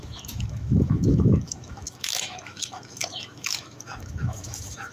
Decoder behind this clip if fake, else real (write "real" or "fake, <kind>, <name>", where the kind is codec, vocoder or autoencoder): fake, autoencoder, DAC-VAE